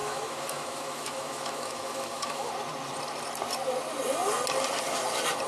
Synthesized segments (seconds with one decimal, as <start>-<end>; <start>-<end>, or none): 0.0-2.5